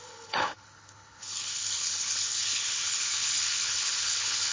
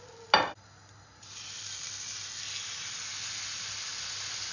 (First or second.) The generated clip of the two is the first